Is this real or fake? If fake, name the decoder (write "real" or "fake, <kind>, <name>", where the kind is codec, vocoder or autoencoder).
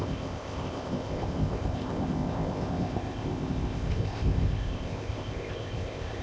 fake, codec, ZipCodec